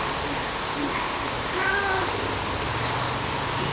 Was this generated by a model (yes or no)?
no